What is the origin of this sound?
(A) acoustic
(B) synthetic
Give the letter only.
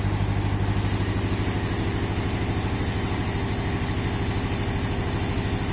A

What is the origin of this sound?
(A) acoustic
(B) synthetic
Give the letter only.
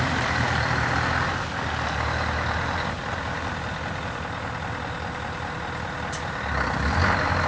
A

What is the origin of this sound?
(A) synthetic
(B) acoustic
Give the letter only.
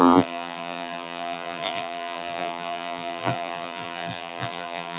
A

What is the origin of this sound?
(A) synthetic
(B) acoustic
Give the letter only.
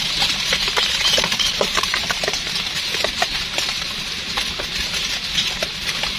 A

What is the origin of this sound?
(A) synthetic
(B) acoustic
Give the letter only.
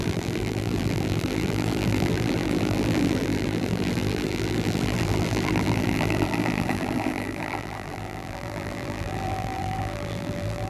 A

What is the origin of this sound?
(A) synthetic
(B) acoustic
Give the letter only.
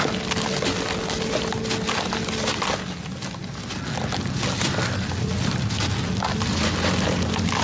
B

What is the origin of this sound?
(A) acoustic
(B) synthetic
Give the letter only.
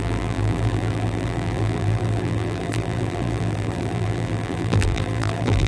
B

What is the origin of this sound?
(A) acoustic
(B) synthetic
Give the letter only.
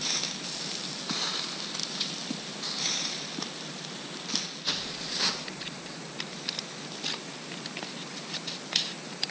A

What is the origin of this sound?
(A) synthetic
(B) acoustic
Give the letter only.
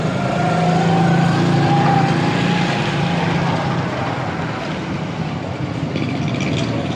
B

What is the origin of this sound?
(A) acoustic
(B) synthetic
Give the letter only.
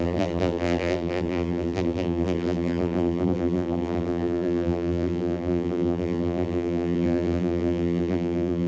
B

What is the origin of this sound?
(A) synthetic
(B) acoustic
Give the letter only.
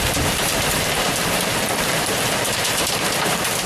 A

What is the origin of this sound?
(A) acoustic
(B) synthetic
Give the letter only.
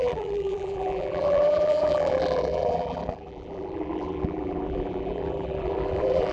B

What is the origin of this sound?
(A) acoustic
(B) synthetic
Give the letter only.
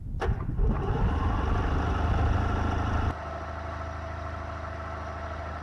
A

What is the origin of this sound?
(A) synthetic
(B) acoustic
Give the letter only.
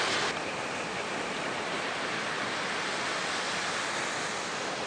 B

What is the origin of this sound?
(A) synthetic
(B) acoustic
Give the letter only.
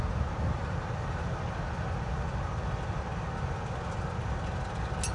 B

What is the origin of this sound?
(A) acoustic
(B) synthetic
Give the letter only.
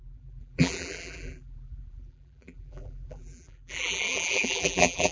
B